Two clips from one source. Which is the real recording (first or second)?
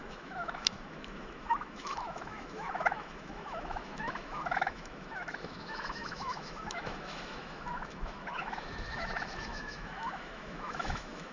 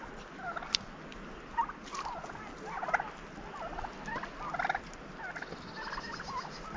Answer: second